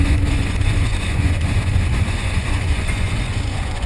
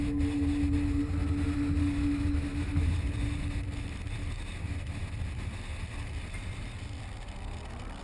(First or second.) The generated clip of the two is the first